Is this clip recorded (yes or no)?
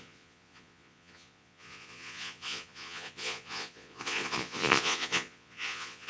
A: no